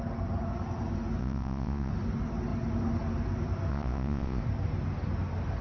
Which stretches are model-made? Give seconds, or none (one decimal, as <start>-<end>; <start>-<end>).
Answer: 1.2-1.9; 3.7-4.4